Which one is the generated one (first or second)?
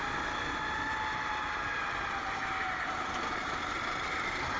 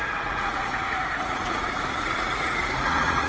second